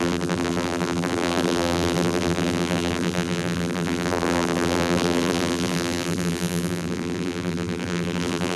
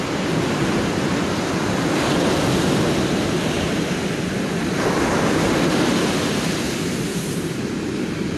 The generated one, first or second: first